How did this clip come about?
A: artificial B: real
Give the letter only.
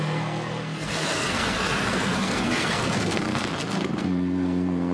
A